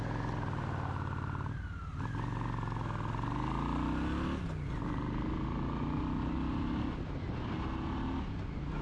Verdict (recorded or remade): recorded